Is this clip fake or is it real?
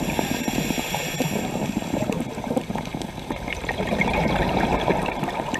fake